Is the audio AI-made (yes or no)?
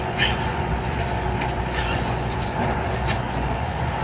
yes